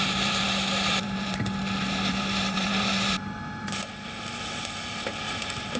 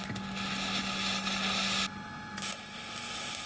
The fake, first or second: first